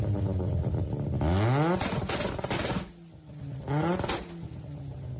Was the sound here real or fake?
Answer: real